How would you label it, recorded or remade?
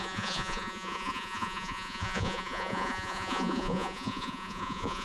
remade